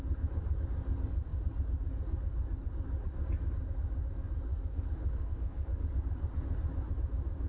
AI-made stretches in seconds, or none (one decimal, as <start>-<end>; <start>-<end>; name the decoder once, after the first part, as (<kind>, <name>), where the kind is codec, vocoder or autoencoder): 4.5-5.8 (codec, SNAC)